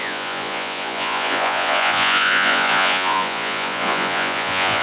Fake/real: fake